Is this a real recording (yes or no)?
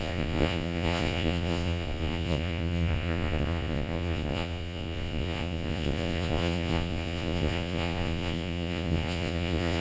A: no